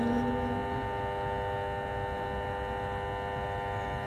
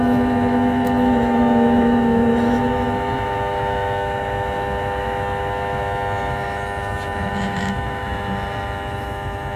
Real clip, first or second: first